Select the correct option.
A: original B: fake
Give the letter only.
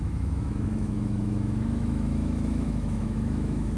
B